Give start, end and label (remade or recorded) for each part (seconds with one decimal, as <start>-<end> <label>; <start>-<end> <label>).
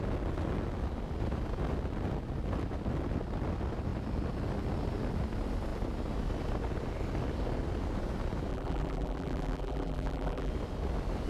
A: 0.0-8.5 recorded; 8.5-10.5 remade; 10.5-11.3 recorded